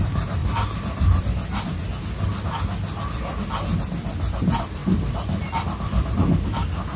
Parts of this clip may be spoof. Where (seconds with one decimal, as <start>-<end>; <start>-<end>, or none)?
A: none